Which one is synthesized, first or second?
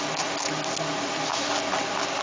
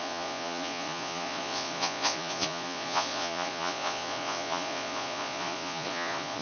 second